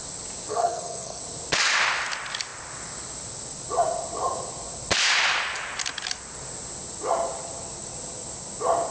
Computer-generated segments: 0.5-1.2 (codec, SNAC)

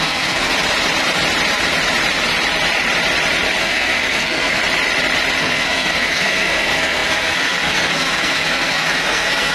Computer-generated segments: 0.0-0.5 (codec, SNAC); 3.6-4.6; 5.4-9.5

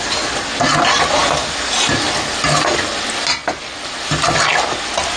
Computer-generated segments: none

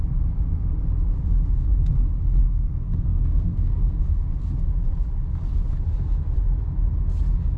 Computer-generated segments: 2.4-4.0 (codec, SNAC)

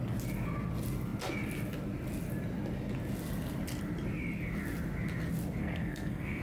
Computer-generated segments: 5.6-6.4 (codec, SNAC)